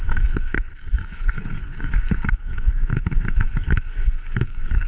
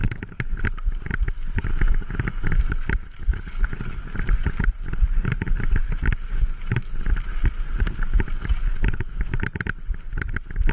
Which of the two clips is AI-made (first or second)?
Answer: first